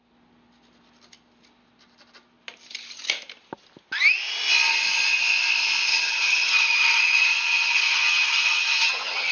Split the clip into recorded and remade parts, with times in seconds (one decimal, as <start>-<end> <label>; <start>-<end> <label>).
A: 0.0-5.9 recorded; 5.9-9.3 remade